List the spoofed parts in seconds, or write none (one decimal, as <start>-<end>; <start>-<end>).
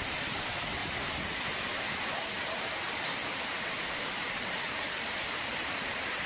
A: 0.0-0.8; 3.8-6.3